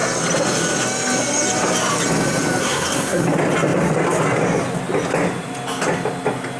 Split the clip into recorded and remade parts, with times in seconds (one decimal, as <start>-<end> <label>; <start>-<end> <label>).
0.0-2.6 recorded; 2.6-3.2 remade; 3.2-6.6 recorded